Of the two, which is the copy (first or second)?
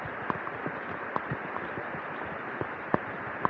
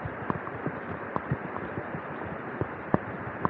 second